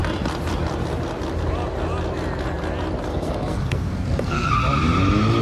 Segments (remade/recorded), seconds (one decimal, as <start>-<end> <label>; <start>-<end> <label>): 0.0-3.1 recorded; 3.1-4.5 remade; 4.5-5.4 recorded